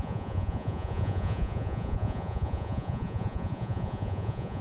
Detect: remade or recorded remade